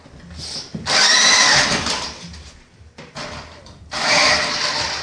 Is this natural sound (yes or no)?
yes